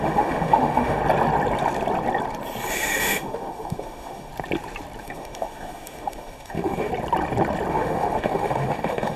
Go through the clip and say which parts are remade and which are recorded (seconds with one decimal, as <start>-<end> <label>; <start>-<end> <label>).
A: 0.0-1.0 remade; 1.0-2.7 recorded; 2.7-4.3 remade; 4.3-5.0 recorded; 5.0-6.9 remade; 6.9-7.7 recorded; 7.7-9.2 remade